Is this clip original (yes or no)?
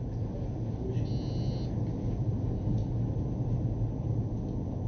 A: yes